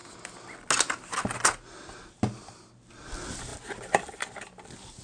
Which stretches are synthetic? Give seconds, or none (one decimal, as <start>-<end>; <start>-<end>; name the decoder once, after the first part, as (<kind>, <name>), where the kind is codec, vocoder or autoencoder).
none